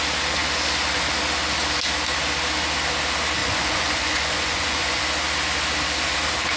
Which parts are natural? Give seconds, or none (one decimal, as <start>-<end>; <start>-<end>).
0.0-3.4; 5.0-6.6